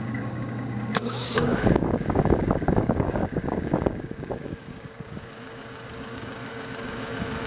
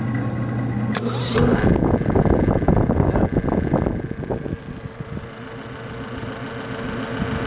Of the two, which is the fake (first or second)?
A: first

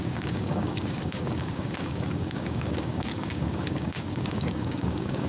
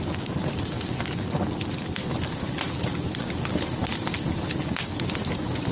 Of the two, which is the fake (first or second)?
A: first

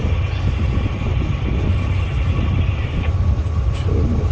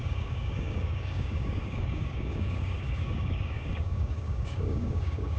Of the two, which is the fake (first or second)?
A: second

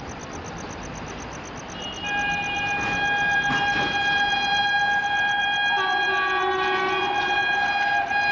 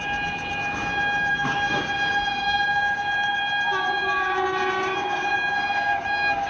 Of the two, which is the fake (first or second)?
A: second